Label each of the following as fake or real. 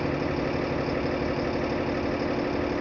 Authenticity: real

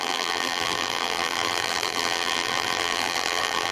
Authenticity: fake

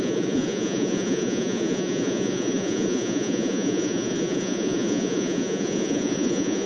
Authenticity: fake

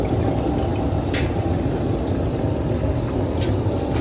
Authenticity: real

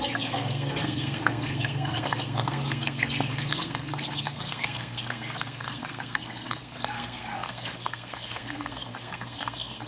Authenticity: fake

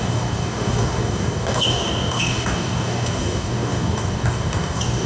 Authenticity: fake